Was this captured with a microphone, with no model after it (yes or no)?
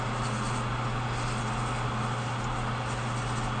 yes